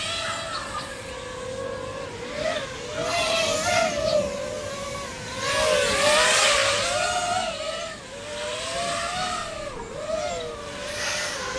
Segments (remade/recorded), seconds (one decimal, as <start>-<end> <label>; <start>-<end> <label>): 0.0-0.6 recorded; 0.6-1.1 remade; 1.1-11.6 recorded